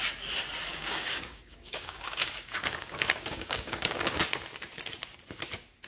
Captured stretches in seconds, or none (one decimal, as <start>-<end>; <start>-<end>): 0.0-0.7; 4.2-5.9